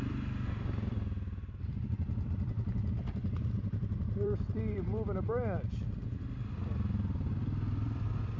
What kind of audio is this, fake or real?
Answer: fake